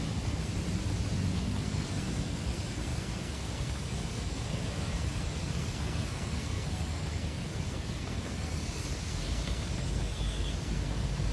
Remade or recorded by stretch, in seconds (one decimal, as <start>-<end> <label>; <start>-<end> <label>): 0.0-0.5 remade; 0.5-1.3 recorded; 1.3-11.3 remade